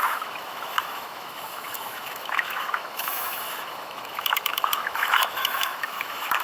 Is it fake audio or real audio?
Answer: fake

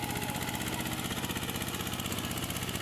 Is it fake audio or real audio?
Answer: real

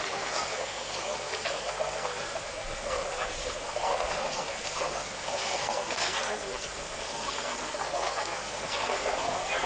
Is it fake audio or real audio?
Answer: fake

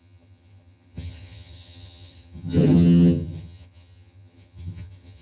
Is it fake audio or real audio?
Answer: fake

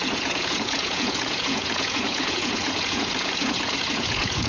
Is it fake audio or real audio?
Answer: fake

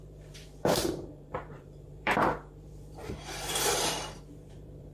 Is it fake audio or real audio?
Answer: fake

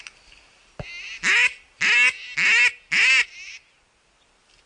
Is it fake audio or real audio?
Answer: real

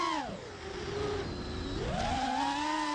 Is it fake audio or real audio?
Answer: real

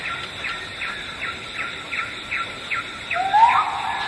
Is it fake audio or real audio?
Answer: real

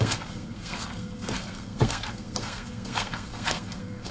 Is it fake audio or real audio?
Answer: fake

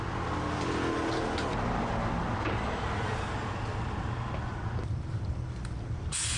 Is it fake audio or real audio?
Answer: real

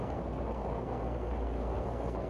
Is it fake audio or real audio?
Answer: fake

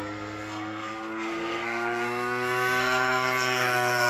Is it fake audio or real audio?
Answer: fake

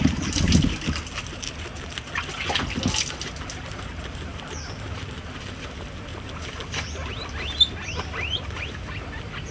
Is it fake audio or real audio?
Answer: real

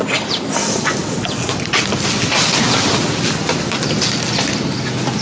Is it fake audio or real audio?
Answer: real